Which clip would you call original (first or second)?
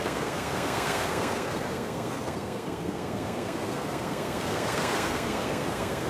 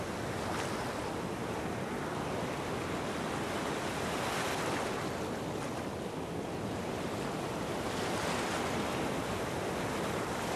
second